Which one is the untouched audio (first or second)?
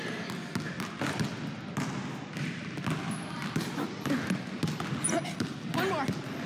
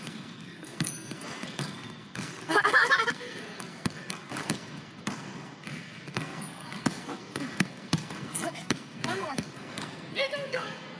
first